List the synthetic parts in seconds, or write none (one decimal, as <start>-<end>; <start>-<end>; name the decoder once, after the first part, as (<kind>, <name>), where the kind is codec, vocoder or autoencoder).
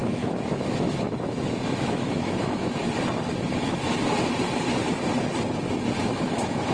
0.0-2.8 (autoencoder, DAC-VAE); 6.0-6.7